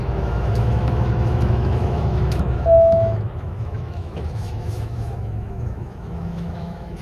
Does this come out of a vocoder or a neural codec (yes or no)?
yes